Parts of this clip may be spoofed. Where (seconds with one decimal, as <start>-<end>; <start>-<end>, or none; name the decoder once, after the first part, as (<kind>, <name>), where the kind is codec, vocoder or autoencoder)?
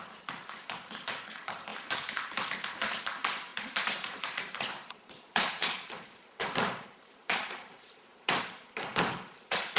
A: 3.5-8.4 (vocoder, BigVGAN v2)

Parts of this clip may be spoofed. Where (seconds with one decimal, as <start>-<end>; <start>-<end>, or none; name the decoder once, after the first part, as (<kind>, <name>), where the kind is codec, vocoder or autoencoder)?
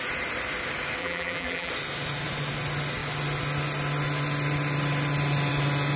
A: 1.0-1.7 (vocoder, BigVGAN v2)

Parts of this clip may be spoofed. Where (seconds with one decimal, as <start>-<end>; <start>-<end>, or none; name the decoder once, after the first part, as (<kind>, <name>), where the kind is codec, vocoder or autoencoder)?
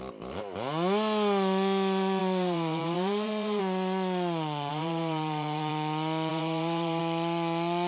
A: 2.2-3.6 (vocoder, BigVGAN v2); 4.7-5.7; 6.3-7.0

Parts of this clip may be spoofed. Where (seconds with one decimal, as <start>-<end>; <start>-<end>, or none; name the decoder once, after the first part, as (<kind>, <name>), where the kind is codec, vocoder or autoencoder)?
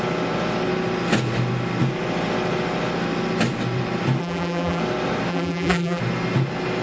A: 4.2-4.8 (vocoder, BigVGAN v2); 5.3-6.0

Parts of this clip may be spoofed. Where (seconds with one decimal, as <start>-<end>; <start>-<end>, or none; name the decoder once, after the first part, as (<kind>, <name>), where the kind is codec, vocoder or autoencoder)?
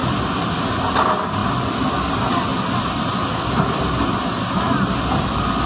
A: none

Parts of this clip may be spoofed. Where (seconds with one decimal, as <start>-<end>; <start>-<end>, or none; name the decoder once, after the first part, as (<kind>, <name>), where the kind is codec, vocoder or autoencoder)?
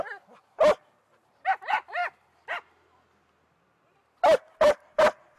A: none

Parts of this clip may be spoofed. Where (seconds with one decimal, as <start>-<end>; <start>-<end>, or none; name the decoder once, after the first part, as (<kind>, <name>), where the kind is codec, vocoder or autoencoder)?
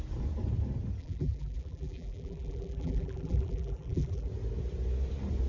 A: 1.0-4.3 (vocoder, BigVGAN v2)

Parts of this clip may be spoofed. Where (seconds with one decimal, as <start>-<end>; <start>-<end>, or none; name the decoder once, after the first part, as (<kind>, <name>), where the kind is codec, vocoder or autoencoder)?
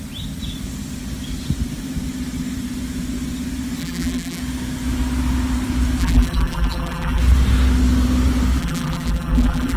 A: 3.8-4.4 (vocoder, BigVGAN v2); 6.0-7.2; 8.6-9.8